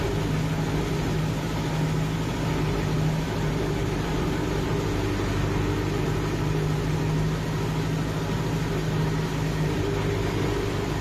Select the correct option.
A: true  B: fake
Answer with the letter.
A